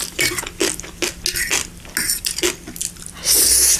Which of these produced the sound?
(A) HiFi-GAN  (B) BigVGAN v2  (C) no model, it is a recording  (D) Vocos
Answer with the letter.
C